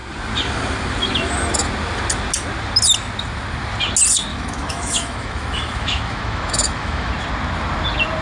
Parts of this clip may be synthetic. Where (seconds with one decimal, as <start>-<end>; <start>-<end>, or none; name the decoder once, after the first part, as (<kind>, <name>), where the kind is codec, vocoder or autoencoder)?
4.3-7.1 (autoencoder, DAC-VAE)